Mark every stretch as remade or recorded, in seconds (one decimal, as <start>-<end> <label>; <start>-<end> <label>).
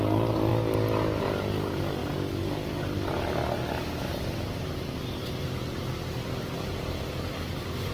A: 0.0-7.9 recorded